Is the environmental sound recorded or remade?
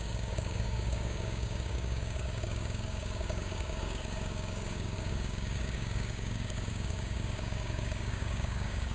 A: remade